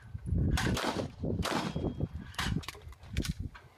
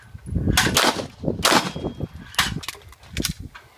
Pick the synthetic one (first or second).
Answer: first